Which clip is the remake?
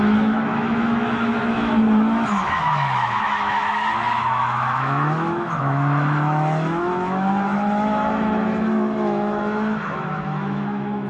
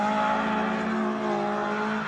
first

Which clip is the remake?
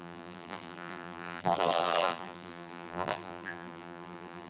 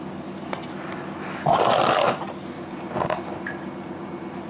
first